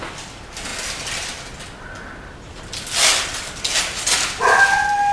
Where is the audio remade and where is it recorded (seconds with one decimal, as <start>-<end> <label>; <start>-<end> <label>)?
0.0-5.1 recorded